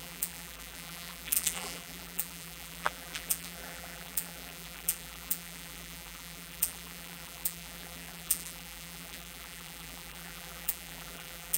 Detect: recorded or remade remade